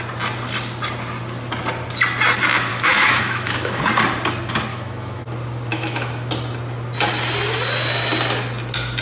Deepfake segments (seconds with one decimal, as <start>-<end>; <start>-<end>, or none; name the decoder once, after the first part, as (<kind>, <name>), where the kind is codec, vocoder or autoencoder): 2.7-3.8 (autoencoder, DAC-VAE); 4.7-5.2; 5.7-6.3